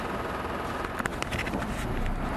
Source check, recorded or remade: recorded